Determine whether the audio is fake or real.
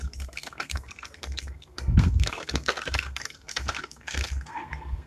fake